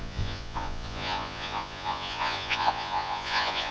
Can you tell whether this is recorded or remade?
remade